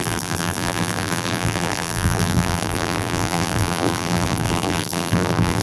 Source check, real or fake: fake